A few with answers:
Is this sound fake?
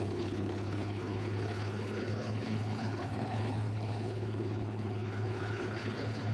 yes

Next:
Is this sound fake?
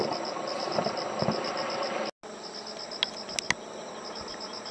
no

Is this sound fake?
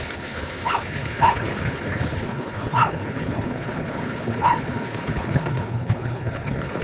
yes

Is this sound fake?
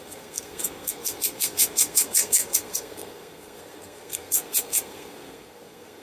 yes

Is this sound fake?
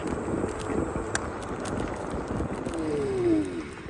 no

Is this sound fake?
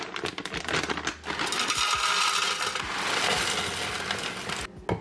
no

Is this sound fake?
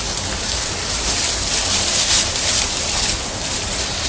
no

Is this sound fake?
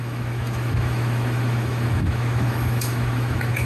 yes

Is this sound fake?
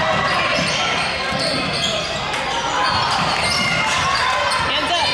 no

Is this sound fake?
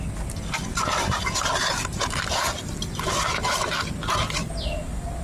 no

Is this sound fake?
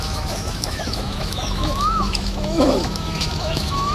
yes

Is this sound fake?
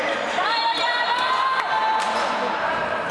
yes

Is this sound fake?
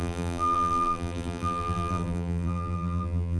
yes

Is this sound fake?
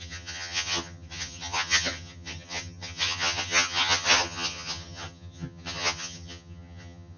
yes